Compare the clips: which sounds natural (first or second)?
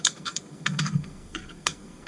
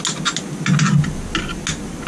second